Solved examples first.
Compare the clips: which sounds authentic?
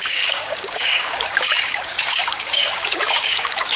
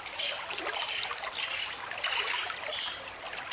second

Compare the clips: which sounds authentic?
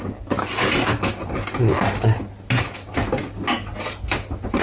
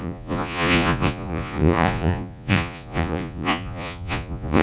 first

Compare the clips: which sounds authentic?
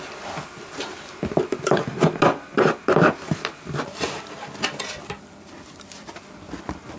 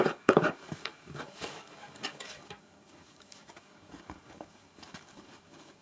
first